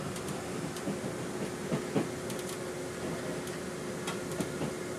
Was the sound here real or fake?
real